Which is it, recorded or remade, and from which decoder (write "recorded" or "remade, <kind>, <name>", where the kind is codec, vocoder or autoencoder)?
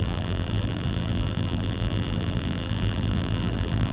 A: remade, vocoder, BigVGAN v2